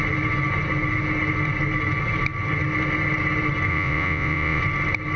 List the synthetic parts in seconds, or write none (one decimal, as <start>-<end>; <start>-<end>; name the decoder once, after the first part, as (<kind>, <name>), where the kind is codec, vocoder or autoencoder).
3.7-4.6 (vocoder, Vocos)